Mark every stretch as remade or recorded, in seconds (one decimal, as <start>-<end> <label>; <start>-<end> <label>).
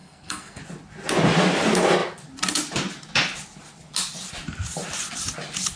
0.0-0.6 remade; 0.6-5.8 recorded